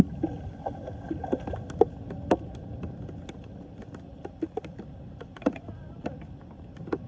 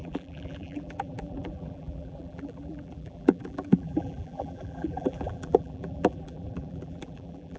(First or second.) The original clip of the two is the first